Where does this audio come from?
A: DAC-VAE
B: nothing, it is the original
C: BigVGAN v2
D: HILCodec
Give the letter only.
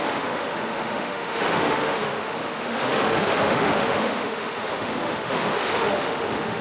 A